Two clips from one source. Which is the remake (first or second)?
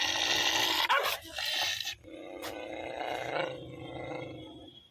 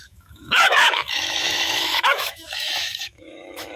second